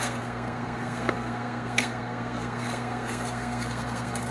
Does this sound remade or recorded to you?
remade